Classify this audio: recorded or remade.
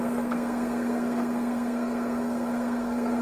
remade